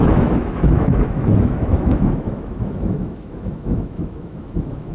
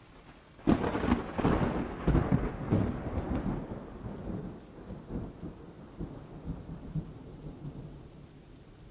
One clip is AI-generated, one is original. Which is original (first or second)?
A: second